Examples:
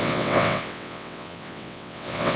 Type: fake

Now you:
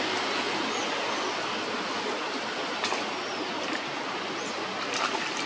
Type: real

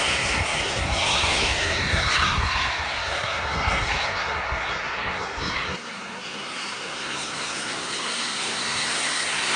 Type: fake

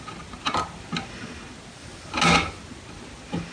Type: real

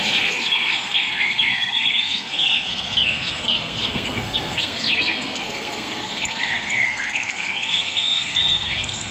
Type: fake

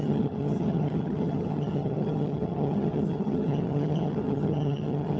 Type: fake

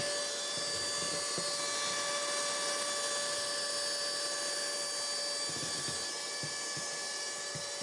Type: real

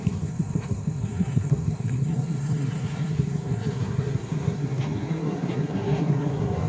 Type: fake